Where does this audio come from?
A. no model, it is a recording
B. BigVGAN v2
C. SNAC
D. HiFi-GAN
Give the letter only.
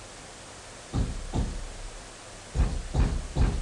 A